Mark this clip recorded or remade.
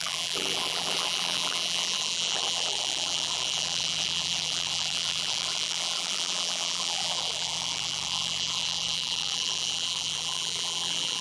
remade